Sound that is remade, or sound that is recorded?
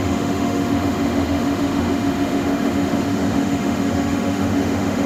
remade